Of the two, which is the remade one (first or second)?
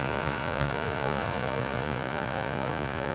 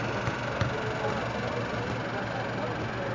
first